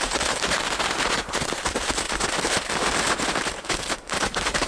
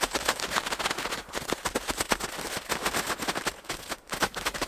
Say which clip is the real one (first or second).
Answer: second